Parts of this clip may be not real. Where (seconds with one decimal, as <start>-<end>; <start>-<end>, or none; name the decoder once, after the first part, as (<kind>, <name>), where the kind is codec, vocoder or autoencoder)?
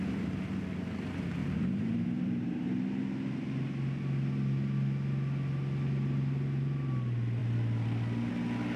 1.4-3.0 (vocoder, BigVGAN v2)